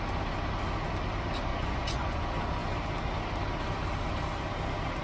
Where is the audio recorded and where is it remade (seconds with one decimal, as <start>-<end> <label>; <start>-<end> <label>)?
0.0-1.5 recorded; 1.5-2.2 remade; 2.2-5.0 recorded